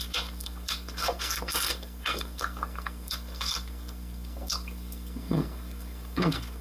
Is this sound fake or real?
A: fake